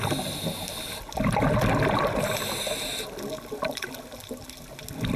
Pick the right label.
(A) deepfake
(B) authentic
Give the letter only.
B